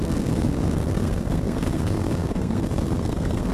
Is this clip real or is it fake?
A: fake